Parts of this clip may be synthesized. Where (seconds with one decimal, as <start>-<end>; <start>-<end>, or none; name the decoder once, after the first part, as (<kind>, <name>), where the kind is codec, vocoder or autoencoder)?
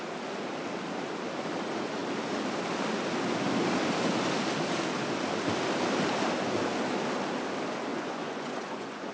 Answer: 7.9-9.1 (vocoder, Vocos)